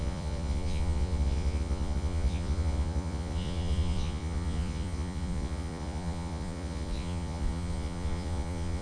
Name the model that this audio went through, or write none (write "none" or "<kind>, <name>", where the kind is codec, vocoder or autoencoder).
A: vocoder, Vocos